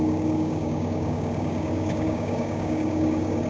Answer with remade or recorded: remade